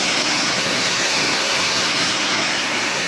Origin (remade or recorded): remade